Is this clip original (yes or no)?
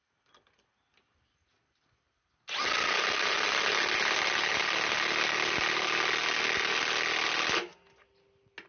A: yes